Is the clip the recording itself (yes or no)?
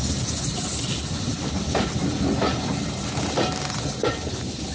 yes